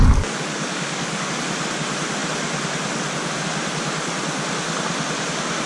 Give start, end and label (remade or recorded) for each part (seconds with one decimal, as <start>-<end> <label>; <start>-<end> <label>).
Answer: 0.0-1.3 remade; 1.3-5.7 recorded